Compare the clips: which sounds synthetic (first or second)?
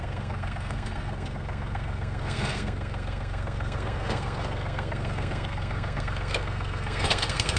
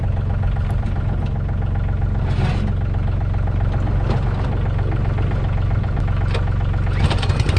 first